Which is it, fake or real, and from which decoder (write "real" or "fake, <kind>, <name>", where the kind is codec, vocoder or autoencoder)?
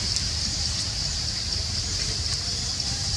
fake, vocoder, BigVGAN v2